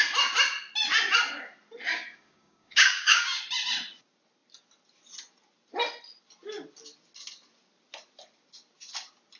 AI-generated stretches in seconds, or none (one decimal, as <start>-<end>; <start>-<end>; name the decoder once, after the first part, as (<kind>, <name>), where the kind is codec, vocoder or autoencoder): 1.9-3.4 (codec, DAC)